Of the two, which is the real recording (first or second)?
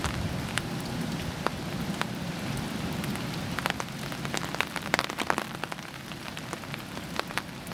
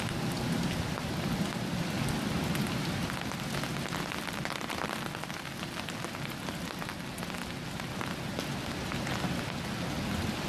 second